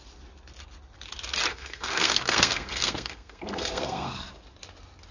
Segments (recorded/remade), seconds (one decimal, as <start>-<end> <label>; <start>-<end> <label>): 0.0-1.5 recorded; 1.5-4.3 remade; 4.3-5.1 recorded